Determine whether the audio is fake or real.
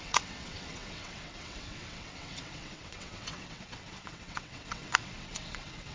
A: fake